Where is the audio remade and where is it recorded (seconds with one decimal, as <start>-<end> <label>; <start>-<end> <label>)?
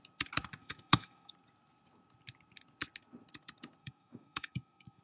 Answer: 0.0-0.6 recorded; 0.6-1.3 remade; 1.3-3.8 recorded; 3.8-5.0 remade